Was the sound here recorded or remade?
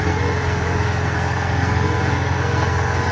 remade